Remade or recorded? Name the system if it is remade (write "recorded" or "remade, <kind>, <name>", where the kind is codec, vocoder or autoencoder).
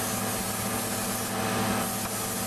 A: recorded